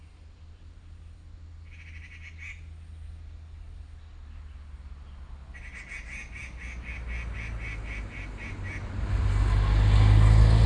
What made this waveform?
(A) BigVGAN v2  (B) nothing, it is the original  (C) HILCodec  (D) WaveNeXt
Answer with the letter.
B